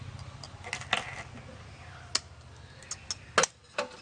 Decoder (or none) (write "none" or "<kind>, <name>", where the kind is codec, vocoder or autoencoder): none